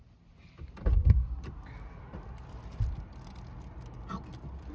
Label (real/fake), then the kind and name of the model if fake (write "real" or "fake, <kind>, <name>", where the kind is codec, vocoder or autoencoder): real